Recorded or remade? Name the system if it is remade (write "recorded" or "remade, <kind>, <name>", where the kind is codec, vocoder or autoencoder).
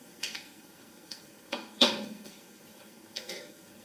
remade, codec, SNAC